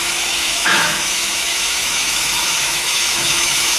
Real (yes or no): no